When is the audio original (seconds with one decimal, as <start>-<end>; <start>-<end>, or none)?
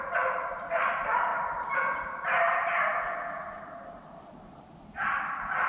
1.3-4.4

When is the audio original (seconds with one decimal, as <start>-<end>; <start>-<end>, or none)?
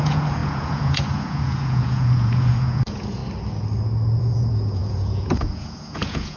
3.2-4.2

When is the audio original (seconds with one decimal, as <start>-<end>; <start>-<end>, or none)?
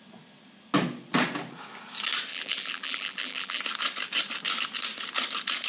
0.0-2.3; 3.6-5.7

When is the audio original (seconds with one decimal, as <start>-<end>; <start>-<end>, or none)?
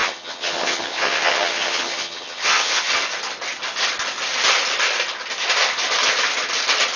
2.9-7.0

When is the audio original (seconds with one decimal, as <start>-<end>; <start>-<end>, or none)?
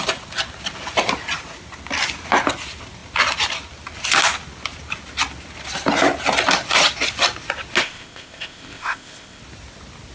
0.0-7.8; 9.4-10.1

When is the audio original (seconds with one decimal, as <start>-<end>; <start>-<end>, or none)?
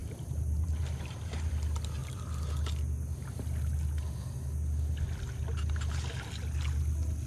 1.5-7.3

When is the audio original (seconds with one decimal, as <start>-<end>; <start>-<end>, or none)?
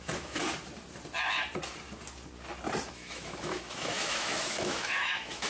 0.4-2.9